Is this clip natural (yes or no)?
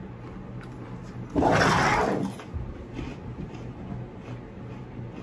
yes